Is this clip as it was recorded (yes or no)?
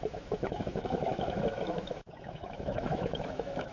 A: no